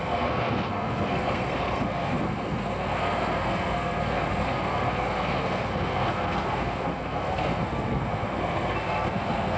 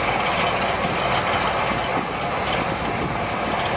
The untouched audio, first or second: second